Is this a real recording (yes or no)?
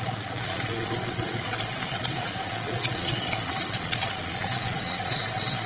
no